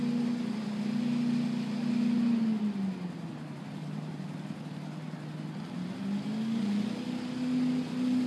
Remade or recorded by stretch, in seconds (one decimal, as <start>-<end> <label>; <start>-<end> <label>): 0.0-3.3 recorded; 3.3-4.3 remade; 4.3-8.3 recorded